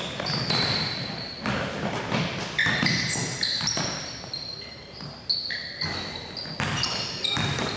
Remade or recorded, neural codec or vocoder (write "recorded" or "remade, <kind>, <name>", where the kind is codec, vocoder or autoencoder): recorded